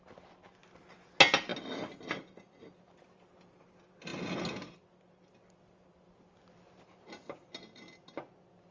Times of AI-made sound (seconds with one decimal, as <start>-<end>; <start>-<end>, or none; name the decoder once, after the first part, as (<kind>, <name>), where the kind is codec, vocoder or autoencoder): none